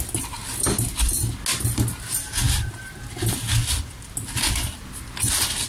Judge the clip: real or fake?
real